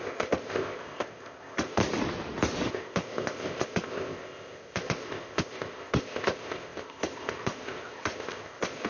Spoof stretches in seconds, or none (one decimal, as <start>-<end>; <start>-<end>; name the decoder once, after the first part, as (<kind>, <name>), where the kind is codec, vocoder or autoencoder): 0.0-1.8 (codec, ZipCodec); 2.7-8.9